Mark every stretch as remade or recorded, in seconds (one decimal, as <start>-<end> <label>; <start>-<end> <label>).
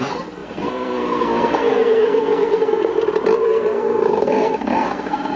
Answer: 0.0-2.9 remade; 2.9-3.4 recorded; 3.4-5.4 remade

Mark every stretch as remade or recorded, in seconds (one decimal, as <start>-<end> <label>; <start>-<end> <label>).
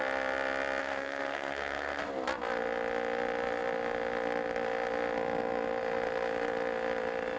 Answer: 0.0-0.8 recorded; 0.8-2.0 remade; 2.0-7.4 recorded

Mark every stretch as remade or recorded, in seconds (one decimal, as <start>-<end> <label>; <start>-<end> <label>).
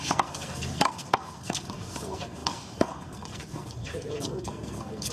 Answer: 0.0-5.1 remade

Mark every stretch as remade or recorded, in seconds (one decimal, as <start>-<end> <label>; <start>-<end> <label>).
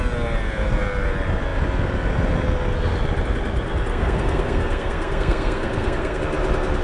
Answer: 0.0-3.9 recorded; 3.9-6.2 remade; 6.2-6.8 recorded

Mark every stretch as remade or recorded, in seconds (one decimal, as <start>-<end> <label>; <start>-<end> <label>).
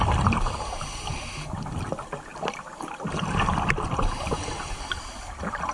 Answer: 0.0-5.7 recorded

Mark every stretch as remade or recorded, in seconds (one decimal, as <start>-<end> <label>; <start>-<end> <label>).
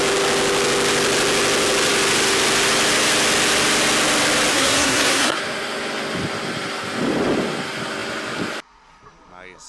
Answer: 0.0-4.5 recorded; 4.5-5.4 remade; 5.4-9.7 recorded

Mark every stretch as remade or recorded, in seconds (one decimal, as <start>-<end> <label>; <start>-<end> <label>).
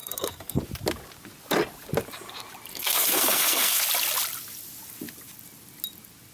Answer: 0.0-0.6 remade; 0.6-2.7 recorded; 2.7-3.8 remade; 3.8-6.3 recorded